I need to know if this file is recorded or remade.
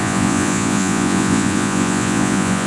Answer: remade